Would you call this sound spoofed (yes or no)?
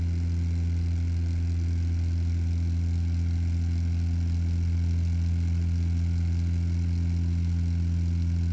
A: no